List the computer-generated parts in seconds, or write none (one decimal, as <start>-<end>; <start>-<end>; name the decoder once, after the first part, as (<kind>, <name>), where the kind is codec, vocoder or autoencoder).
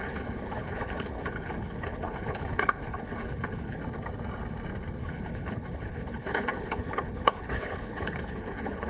0.0-3.8 (codec, HILCodec); 5.0-8.9